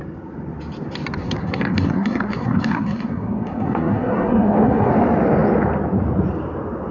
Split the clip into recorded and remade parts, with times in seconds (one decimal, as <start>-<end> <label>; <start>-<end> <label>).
0.0-1.2 recorded; 1.2-4.9 remade; 4.9-6.9 recorded